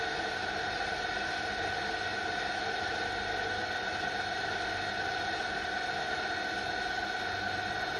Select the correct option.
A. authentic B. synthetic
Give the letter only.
A